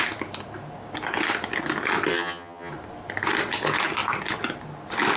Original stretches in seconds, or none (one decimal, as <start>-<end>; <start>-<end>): 0.0-2.1; 2.7-5.2